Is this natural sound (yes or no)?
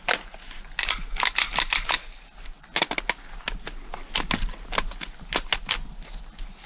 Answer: yes